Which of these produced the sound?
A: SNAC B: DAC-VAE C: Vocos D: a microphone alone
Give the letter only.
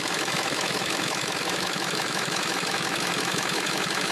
B